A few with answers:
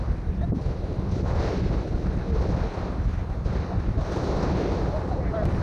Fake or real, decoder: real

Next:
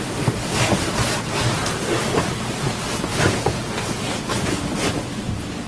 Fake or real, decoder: real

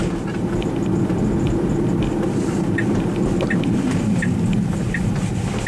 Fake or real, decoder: real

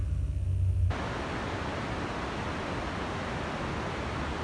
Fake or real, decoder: real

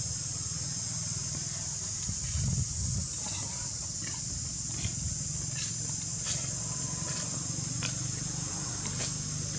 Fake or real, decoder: real